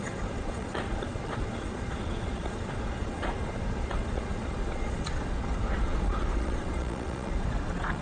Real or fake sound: fake